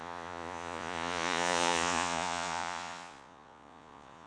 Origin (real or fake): fake